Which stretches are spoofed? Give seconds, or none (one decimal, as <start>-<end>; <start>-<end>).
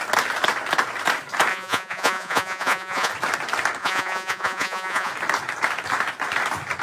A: 1.5-3.1; 3.8-5.1